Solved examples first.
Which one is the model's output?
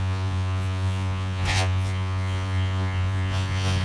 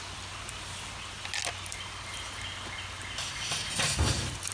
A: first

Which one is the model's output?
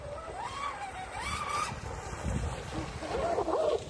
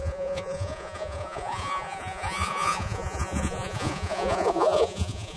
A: second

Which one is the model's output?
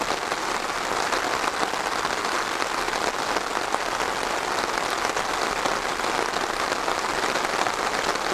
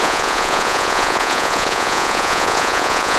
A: second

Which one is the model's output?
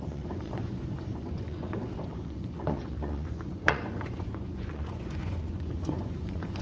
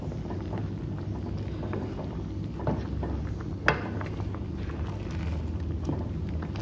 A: first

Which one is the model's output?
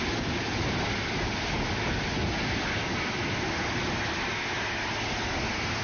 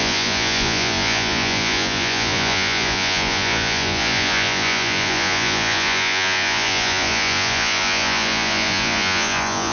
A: second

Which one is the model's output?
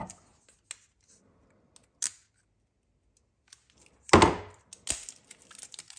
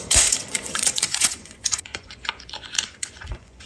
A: second